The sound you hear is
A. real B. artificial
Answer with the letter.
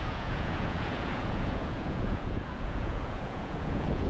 B